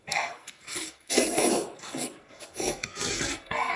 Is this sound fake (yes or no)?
yes